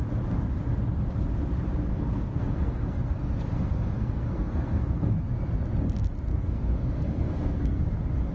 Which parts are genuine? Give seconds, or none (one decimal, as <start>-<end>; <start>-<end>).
0.0-1.9; 5.1-6.3; 7.8-8.3